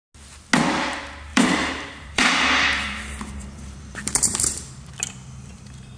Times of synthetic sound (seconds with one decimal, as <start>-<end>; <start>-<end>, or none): 1.3-4.9